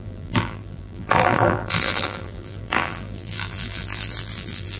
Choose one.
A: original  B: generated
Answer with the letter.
B